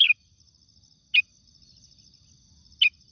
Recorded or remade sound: recorded